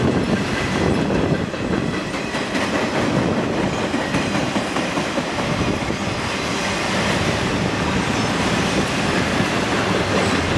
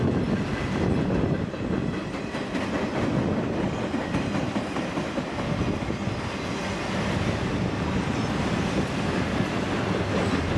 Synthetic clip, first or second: first